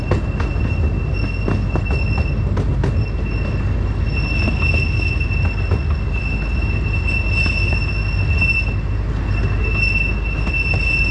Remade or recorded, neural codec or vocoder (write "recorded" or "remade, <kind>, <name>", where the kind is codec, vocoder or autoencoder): recorded